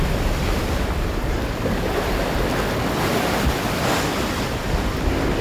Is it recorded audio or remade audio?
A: recorded